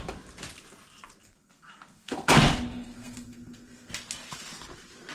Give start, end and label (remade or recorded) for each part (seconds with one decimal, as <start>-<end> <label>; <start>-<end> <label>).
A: 0.0-1.2 recorded; 1.2-2.3 remade; 2.3-2.7 recorded; 2.7-3.9 remade; 3.9-5.1 recorded